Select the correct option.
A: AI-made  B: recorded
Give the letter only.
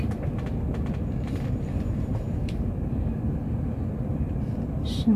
B